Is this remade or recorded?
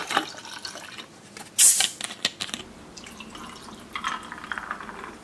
recorded